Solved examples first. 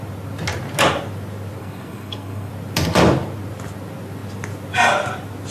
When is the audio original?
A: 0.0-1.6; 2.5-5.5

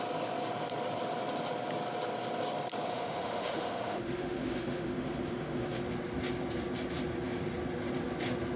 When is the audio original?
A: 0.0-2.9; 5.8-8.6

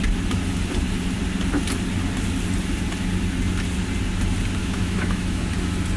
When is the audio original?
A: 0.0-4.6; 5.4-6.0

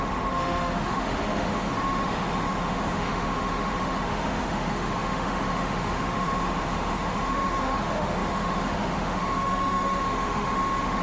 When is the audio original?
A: none

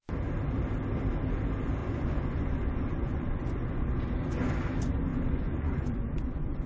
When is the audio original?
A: 0.0-1.8; 4.6-5.1